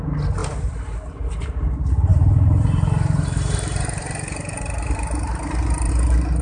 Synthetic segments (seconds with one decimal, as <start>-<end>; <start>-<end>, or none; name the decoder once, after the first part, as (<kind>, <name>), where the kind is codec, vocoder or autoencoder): 2.1-5.9 (vocoder, BigVGAN v2)